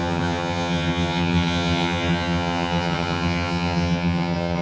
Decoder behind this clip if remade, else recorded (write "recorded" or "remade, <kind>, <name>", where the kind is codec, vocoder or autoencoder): remade, vocoder, HiFi-GAN